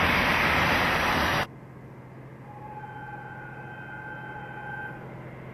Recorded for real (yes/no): yes